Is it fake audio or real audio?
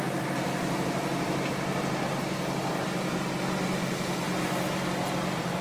fake